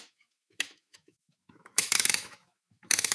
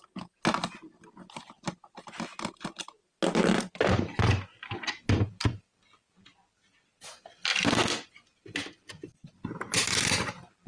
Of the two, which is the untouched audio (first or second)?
second